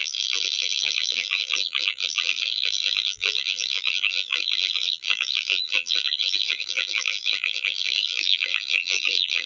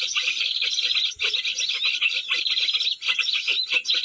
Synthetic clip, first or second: first